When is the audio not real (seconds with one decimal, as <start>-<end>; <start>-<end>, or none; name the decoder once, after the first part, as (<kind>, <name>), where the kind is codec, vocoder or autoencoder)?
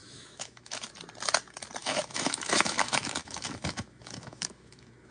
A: 0.0-0.9 (autoencoder, DAC-VAE); 1.8-5.1